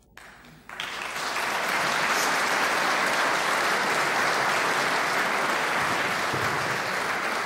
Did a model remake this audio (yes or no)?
no